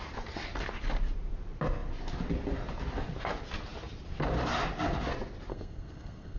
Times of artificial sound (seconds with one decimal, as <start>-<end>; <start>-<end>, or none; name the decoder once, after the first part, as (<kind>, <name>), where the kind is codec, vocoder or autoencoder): 5.5-6.4 (codec, SNAC)